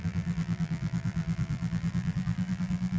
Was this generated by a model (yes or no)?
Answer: yes